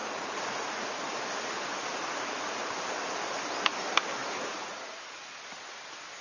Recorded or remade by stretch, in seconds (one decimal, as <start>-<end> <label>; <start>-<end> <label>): 0.0-1.1 remade; 1.1-1.9 recorded; 1.9-2.7 remade; 2.7-4.2 recorded; 4.2-5.6 remade; 5.6-6.2 recorded